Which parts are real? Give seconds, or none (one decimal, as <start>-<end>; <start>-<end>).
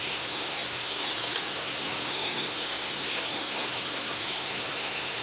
none